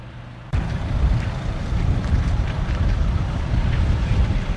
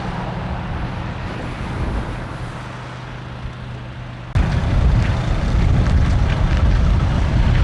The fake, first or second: first